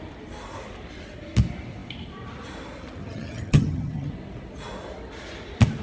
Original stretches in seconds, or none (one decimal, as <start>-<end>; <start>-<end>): 0.0-3.0; 4.1-5.8